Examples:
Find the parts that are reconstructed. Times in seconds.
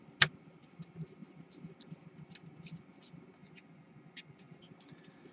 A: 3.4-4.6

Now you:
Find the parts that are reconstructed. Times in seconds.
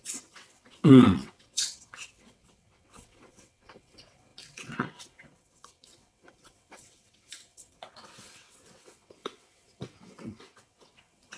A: 0.0-11.4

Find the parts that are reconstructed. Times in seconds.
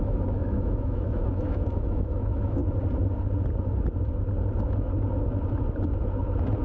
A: 0.0-2.6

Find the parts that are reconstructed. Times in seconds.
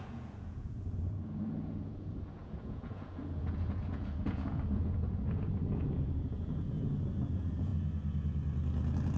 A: 0.0-7.7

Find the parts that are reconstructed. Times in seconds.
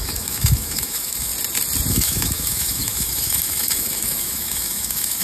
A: 0.0-1.3; 1.9-5.2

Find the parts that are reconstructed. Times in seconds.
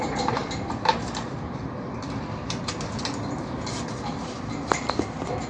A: none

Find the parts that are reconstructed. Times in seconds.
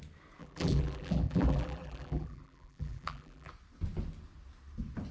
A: 0.4-3.5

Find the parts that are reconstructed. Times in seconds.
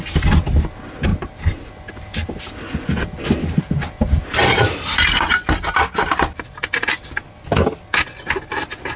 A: 1.1-1.7